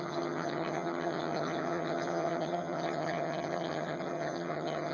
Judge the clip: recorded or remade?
remade